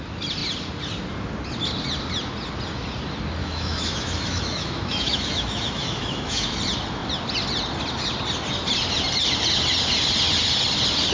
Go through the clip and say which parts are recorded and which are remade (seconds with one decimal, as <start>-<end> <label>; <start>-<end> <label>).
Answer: 0.0-3.4 recorded; 3.4-6.6 remade; 6.6-11.1 recorded